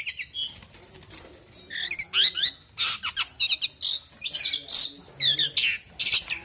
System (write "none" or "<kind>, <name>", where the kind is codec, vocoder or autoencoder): none